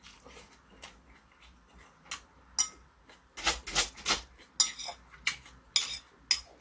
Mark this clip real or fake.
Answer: real